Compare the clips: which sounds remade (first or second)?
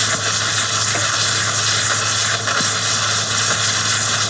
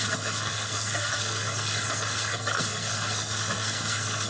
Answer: second